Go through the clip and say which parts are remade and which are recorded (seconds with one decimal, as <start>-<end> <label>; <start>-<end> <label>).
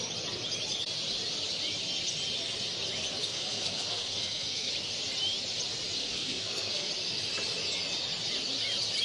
0.0-3.2 recorded; 3.2-4.7 remade; 4.7-6.0 recorded; 6.0-6.9 remade; 6.9-9.0 recorded